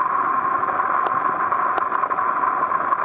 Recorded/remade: recorded